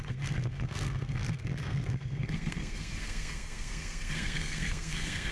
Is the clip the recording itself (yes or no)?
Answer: no